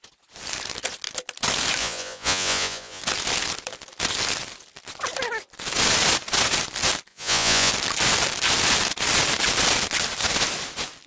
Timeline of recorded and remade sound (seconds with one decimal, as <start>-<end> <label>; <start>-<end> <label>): 0.0-1.8 recorded; 1.8-3.0 remade; 3.0-7.1 recorded; 7.1-7.7 remade; 7.7-11.1 recorded